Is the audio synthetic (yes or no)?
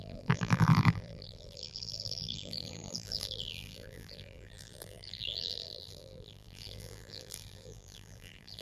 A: yes